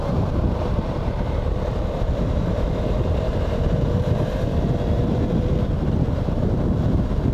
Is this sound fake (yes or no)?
yes